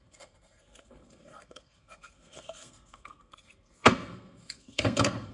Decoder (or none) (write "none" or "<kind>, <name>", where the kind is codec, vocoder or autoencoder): codec, SNAC